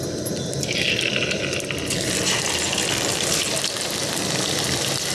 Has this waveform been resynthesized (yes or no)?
no